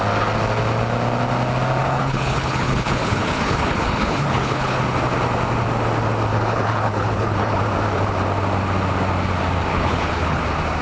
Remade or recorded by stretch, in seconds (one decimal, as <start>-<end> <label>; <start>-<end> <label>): 0.0-1.8 recorded; 1.8-4.8 remade; 4.8-6.3 recorded; 6.3-7.6 remade; 7.6-9.7 recorded; 9.7-10.4 remade; 10.4-10.8 recorded